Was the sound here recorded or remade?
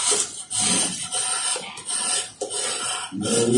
recorded